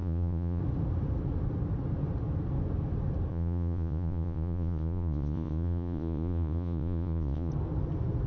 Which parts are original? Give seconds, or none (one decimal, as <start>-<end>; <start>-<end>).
0.6-3.3; 7.5-8.3